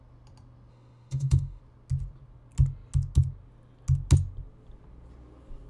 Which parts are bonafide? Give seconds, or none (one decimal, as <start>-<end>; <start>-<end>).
0.0-0.7; 1.6-5.7